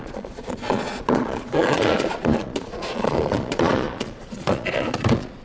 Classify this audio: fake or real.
fake